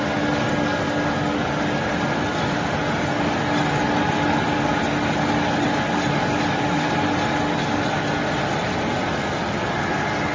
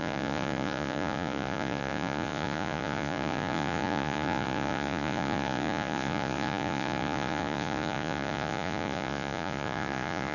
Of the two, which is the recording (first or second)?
first